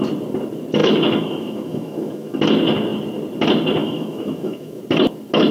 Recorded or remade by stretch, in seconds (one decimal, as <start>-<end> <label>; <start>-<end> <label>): 0.0-0.8 recorded; 0.8-2.4 remade; 2.4-3.8 recorded; 3.8-4.8 remade; 4.8-5.5 recorded